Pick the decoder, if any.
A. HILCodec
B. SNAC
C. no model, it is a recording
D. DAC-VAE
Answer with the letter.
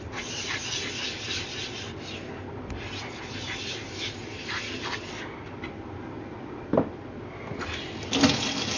C